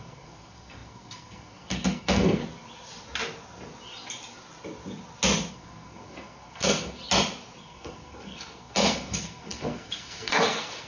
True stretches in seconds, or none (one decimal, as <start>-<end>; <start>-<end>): 2.4-5.5; 7.0-7.6